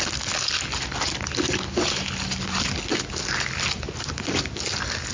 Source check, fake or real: real